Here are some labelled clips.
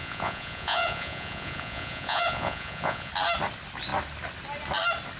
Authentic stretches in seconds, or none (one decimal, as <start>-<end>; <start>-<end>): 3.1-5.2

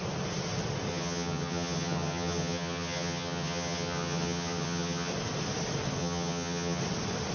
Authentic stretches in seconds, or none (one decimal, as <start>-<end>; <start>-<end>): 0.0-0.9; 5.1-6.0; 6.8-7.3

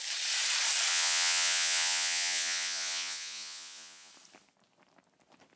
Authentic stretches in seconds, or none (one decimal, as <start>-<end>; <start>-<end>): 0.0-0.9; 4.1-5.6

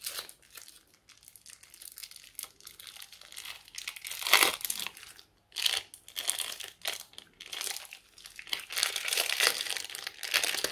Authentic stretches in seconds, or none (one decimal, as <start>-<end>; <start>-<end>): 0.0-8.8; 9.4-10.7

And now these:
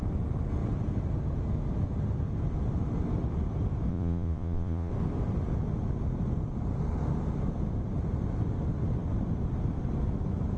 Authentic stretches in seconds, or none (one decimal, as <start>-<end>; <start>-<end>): 0.0-3.9; 4.9-10.6

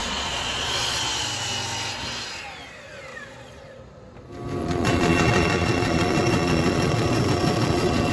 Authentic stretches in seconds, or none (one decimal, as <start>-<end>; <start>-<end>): 1.0-3.1; 3.8-4.6

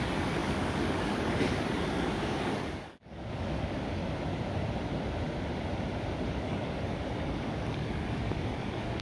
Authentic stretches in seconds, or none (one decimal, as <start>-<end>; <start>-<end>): 4.0-6.3

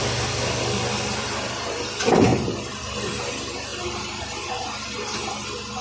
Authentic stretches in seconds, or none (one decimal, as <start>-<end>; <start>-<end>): 0.0-2.3; 2.8-3.7; 4.5-5.8